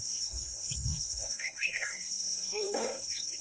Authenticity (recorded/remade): remade